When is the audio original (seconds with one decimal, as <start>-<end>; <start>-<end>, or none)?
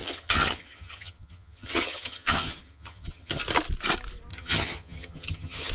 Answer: 3.4-4.3